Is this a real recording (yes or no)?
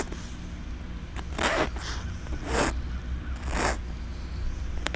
yes